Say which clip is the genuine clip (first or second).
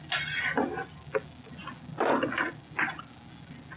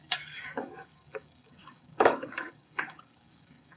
first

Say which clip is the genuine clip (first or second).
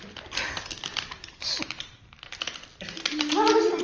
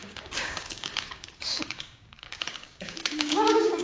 first